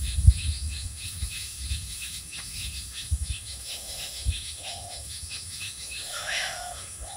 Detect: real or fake fake